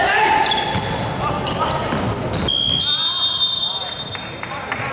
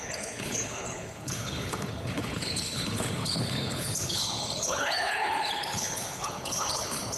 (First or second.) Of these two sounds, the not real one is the second